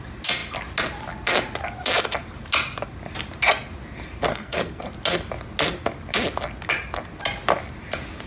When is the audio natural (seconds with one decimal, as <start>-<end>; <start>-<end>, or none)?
0.0-4.3; 4.8-8.3